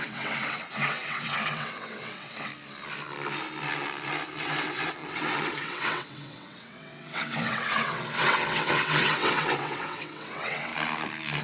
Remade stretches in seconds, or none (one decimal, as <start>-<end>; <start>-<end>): 0.0-2.5; 4.4-10.7